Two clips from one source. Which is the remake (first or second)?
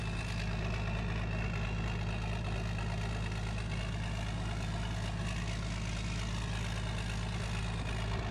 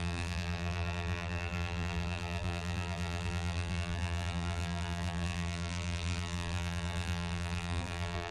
second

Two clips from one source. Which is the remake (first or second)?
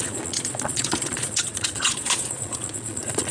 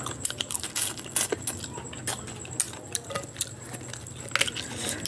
first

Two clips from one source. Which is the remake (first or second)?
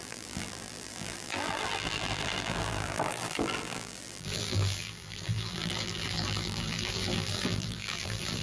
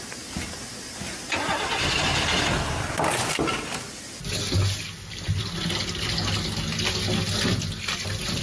first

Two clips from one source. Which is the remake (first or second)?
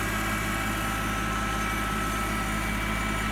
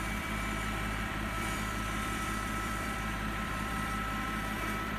second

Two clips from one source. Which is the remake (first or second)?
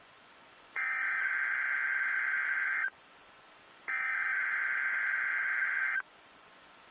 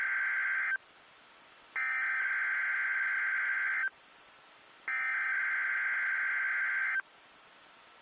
first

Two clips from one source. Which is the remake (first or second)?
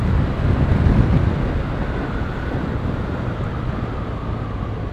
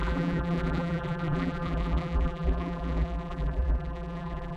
second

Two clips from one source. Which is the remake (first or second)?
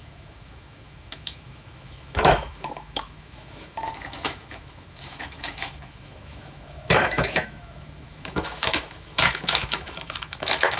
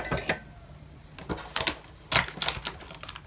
first